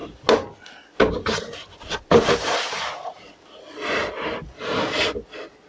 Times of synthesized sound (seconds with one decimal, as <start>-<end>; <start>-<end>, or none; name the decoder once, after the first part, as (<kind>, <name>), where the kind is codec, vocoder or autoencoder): none